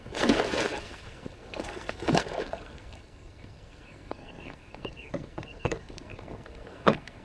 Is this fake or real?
fake